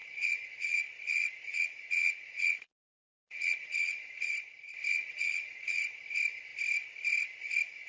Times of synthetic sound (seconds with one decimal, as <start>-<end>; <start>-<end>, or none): 0.0-4.3; 4.9-5.8